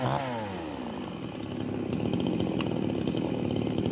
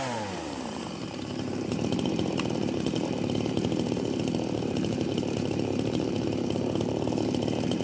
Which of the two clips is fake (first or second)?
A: second